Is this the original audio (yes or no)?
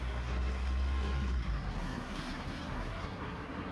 no